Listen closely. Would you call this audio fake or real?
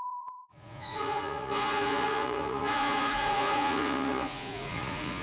fake